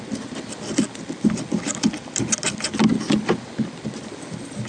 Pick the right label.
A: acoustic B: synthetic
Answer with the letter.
A